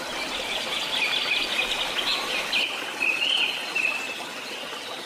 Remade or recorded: recorded